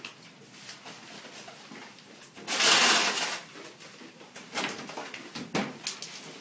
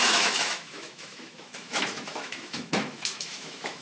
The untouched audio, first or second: first